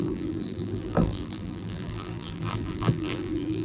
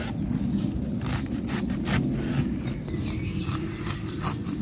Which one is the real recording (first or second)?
second